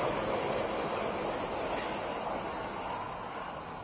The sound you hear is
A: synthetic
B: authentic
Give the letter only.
B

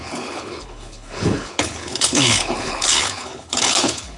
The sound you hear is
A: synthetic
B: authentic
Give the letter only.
A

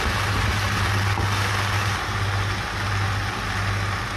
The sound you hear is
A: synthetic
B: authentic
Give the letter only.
B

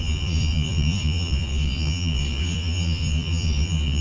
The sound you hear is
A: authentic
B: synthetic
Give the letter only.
B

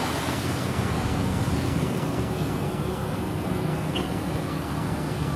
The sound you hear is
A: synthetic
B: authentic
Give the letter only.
A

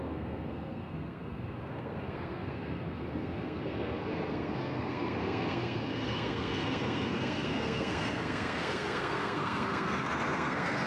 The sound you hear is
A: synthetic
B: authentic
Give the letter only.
A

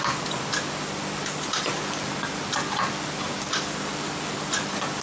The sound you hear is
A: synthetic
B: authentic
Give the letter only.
B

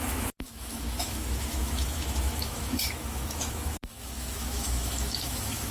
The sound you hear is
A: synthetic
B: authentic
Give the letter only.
A